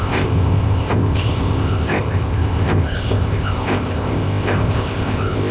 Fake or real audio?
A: fake